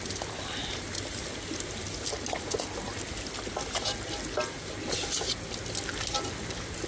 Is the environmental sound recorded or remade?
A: recorded